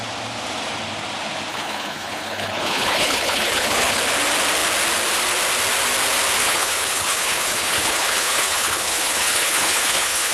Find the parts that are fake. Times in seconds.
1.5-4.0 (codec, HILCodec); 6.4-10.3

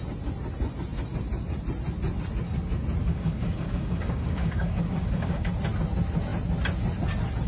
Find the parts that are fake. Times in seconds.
3.0-5.5 (codec, DAC)

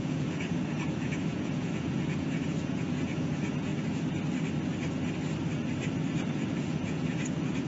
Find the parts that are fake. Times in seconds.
0.0-3.7 (vocoder, Vocos); 6.3-7.7

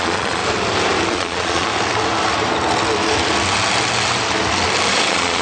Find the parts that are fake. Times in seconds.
0.0-0.4 (vocoder, Vocos); 1.1-1.7; 4.9-5.4

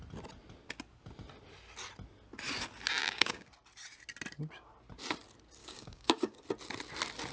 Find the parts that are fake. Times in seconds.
3.0-3.5 (codec, DAC); 5.6-6.4

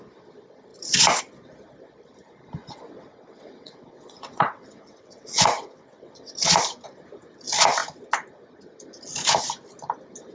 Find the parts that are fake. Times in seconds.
2.6-6.3 (vocoder, WaveNeXt)

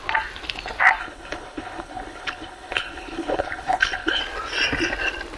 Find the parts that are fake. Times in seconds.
1.0-4.2 (codec, HILCodec)

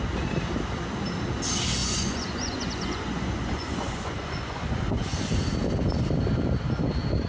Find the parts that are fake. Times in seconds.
1.8-5.2 (vocoder, Vocos)